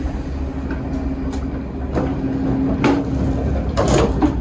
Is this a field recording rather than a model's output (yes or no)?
yes